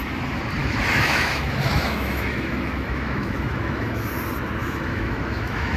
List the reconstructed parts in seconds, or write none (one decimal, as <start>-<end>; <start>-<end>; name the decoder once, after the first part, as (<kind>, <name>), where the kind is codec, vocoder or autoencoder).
0.6-4.1 (autoencoder, DAC-VAE); 4.6-5.8